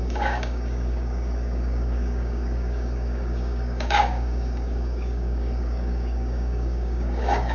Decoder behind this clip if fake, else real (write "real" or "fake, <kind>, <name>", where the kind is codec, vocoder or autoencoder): fake, codec, DAC